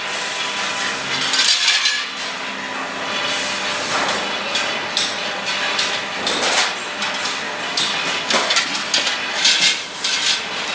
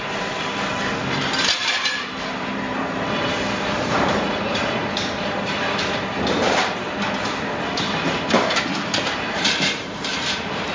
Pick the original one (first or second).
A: first